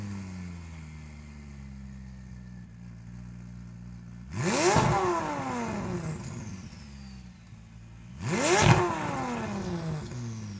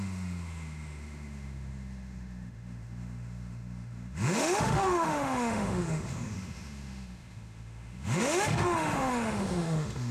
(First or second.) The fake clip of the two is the second